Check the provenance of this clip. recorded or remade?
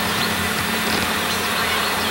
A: remade